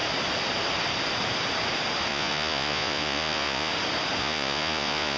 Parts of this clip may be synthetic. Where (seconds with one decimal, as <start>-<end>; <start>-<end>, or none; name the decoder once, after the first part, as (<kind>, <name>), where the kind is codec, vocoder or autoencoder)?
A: 2.1-3.7 (vocoder, Vocos); 4.2-5.2